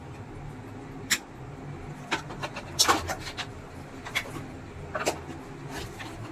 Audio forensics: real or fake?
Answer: real